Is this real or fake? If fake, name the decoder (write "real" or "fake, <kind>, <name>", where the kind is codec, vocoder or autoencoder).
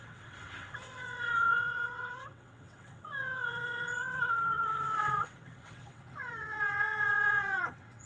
fake, vocoder, WaveNeXt